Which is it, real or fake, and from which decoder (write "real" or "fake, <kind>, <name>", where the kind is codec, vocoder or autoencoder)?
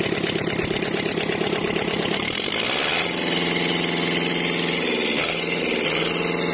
real